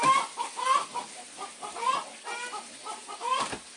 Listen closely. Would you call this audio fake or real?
real